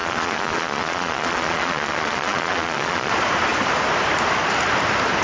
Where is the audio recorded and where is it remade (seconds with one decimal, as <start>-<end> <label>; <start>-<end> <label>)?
0.0-3.1 remade; 3.1-5.2 recorded